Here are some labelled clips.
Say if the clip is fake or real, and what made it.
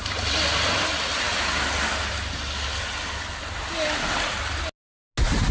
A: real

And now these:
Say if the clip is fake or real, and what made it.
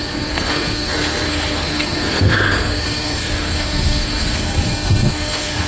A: fake, codec, SNAC